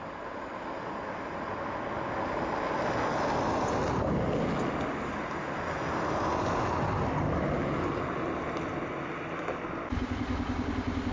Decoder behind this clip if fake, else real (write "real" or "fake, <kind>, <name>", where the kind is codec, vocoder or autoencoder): real